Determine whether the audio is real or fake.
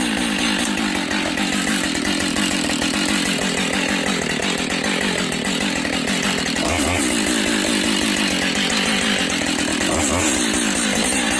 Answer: real